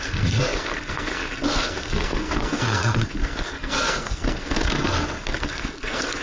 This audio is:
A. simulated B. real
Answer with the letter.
A